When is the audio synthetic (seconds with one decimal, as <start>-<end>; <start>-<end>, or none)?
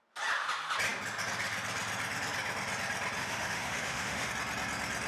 3.2-4.3